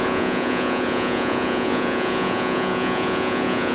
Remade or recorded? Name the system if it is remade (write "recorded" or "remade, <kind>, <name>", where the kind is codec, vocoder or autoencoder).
remade, vocoder, Vocos